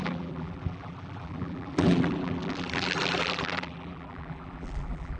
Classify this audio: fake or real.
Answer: fake